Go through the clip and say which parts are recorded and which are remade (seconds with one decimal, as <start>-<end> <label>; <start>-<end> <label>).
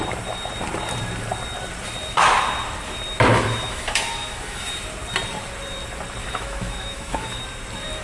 0.0-3.3 recorded; 3.3-4.7 remade; 4.7-6.2 recorded; 6.2-7.4 remade; 7.4-8.0 recorded